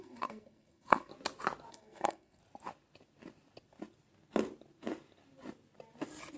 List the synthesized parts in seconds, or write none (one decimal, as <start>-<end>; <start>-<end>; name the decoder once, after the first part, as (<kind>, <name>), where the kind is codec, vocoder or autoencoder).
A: 0.0-1.1 (codec, SNAC); 1.7-2.4